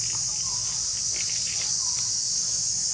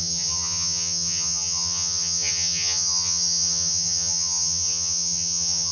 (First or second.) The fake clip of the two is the second